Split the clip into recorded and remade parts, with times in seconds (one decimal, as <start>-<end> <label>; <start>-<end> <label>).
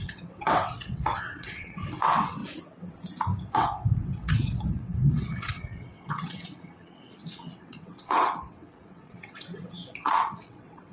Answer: 0.0-2.4 remade; 2.4-3.4 recorded; 3.4-10.9 remade